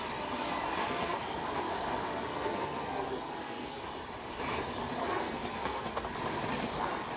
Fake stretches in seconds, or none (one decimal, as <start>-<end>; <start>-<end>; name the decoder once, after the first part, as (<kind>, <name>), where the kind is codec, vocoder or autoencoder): 0.8-3.8 (codec, SNAC); 5.0-6.0